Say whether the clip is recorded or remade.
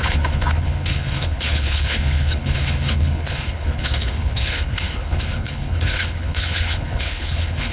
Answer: remade